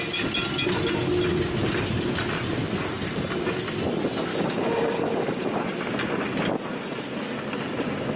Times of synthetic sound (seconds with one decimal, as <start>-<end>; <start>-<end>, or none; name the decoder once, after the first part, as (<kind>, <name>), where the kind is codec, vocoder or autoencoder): 4.3-5.6 (codec, DAC)

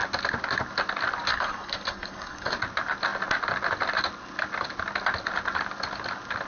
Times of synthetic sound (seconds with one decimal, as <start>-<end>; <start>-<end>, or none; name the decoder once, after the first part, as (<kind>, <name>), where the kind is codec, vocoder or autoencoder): 1.3-2.5 (codec, DAC)

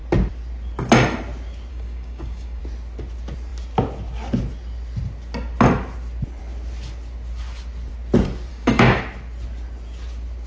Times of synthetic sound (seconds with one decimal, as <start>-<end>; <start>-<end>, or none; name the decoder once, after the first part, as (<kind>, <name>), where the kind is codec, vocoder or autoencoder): 1.7-2.6 (codec, DAC); 8.5-9.0

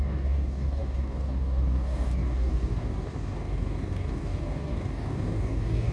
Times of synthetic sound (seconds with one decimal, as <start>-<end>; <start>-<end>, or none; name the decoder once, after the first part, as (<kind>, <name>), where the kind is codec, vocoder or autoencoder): 0.0-5.9 (codec, DAC)

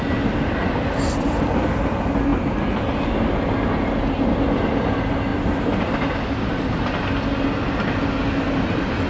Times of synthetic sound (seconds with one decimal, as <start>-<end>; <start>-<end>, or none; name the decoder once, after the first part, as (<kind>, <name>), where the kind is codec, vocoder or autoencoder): none

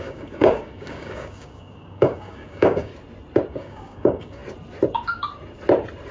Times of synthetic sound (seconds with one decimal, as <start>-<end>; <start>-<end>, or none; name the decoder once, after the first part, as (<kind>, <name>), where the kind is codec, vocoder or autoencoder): 0.0-2.9 (codec, DAC); 3.5-4.4

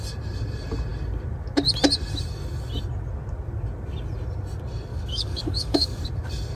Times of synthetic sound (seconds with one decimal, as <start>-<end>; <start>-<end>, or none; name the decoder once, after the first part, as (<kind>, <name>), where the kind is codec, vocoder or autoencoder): 4.9-6.0 (codec, DAC)

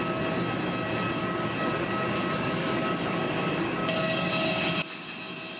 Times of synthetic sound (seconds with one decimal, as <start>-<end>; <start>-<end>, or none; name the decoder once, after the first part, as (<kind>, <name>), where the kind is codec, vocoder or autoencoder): 1.2-4.3 (codec, DAC)